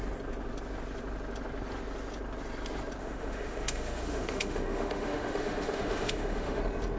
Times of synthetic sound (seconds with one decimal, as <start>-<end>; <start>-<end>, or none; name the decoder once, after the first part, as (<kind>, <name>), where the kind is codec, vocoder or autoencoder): 3.0-6.6 (autoencoder, DAC-VAE)